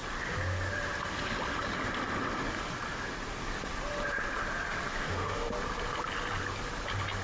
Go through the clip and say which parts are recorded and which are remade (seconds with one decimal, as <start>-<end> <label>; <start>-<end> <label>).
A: 0.0-4.9 recorded; 4.9-5.5 remade; 5.5-7.2 recorded